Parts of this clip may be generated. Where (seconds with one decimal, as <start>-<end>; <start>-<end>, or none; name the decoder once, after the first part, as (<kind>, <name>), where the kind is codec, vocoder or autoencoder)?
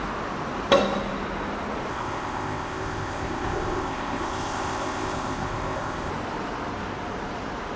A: 1.9-6.1 (codec, ZipCodec)